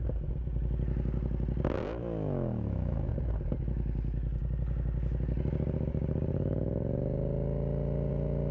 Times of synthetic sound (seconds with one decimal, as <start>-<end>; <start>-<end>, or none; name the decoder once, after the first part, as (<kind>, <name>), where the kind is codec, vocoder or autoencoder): 2.0-3.1 (autoencoder, DAC-VAE)